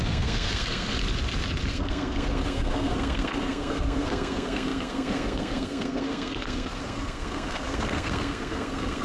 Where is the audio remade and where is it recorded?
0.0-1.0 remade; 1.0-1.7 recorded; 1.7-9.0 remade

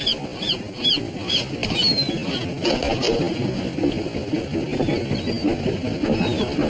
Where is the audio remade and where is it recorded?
0.0-6.7 recorded